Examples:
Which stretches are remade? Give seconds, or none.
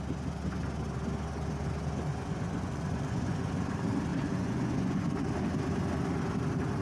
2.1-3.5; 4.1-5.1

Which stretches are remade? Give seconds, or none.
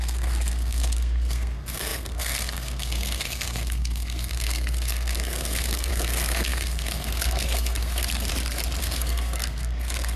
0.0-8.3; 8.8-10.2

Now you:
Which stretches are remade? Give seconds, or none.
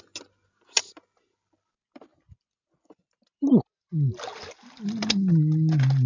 none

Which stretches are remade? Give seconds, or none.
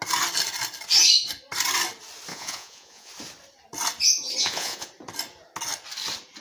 2.3-3.1; 4.4-4.9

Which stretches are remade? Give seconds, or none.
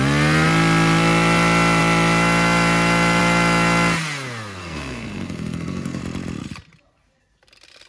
4.6-6.0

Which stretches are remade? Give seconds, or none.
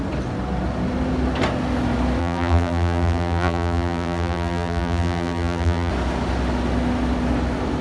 2.2-5.9